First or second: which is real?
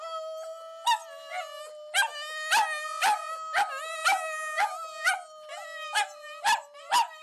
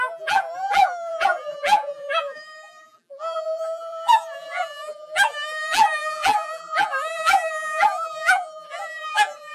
first